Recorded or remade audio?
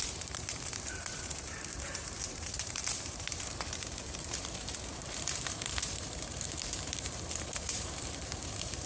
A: remade